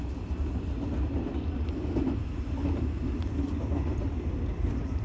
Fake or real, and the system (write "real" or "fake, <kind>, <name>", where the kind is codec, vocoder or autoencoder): real